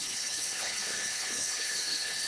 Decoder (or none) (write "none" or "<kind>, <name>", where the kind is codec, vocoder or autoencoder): codec, HILCodec